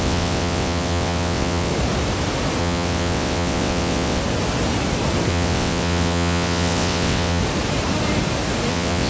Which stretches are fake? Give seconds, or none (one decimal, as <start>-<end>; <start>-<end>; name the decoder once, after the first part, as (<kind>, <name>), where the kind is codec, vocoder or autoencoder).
0.0-1.7 (vocoder, WaveNeXt); 2.6-4.2; 5.3-7.4; 8.7-9.1